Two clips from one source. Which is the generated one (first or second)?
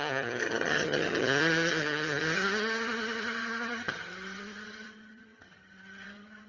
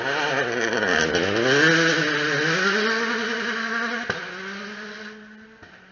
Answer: first